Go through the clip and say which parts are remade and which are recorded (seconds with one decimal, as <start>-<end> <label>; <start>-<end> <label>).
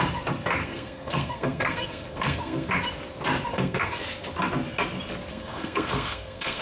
0.0-0.6 recorded; 0.6-2.7 remade; 2.7-3.5 recorded; 3.5-4.0 remade; 4.0-5.3 recorded; 5.3-6.6 remade